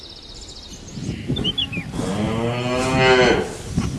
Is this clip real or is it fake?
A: real